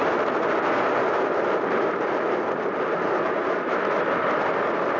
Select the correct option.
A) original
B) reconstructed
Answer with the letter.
A